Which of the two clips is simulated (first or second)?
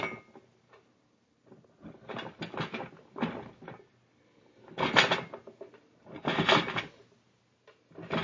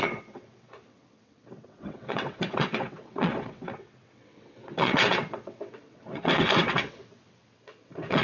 second